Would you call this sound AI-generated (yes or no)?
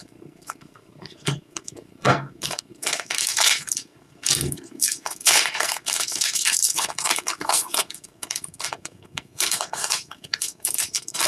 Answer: yes